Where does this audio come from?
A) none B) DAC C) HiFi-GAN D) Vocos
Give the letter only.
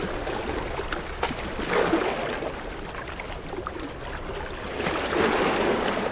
A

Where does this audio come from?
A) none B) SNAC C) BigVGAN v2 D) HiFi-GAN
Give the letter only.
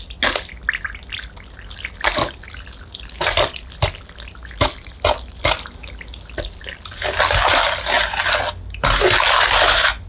A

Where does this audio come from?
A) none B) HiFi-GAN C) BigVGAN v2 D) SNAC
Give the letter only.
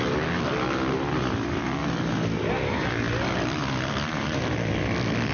A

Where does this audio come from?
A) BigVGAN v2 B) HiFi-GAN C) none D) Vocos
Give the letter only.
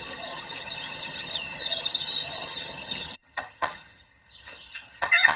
B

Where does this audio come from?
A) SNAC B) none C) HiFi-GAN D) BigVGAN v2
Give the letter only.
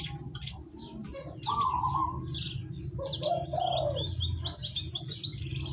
B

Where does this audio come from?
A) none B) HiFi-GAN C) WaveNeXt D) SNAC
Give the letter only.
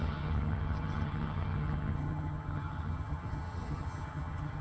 B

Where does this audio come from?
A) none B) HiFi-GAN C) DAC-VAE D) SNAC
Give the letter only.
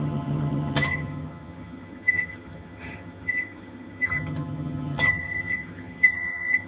B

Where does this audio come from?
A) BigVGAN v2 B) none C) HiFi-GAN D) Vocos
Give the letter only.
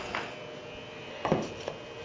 B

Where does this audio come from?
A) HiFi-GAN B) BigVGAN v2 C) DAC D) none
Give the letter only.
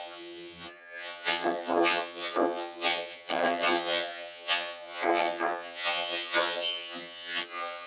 A